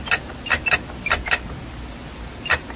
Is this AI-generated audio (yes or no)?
no